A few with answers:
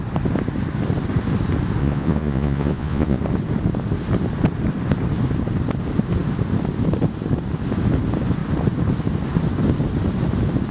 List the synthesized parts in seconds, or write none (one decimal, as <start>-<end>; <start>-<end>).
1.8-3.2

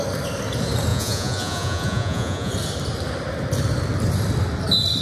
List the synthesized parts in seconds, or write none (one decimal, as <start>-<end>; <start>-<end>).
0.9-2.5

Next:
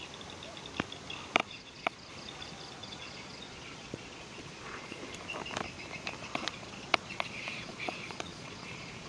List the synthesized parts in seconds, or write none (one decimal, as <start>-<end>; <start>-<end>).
1.4-2.1; 2.8-5.0; 6.2-9.1

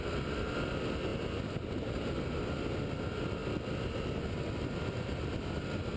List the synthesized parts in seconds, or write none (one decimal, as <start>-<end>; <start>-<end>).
none

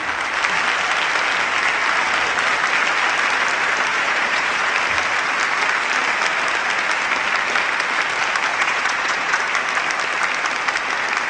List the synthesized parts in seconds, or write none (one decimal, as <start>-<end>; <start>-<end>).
3.9-4.7; 8.5-9.4

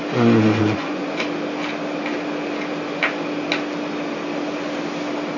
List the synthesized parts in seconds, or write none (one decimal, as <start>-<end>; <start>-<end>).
0.6-1.2

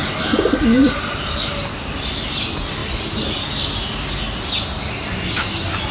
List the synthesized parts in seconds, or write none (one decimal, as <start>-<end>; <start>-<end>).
none